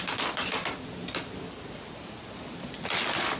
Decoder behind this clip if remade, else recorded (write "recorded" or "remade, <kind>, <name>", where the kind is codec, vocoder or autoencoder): recorded